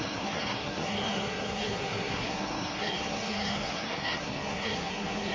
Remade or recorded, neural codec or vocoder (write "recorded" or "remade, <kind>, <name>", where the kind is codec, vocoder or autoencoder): remade, codec, SNAC